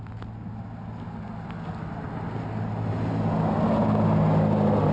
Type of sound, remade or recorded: recorded